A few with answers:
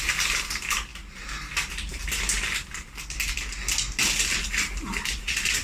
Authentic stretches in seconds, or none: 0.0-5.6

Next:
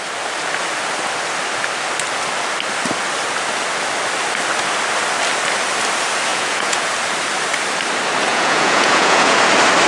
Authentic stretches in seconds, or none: 0.0-6.3; 6.9-8.3; 9.4-9.9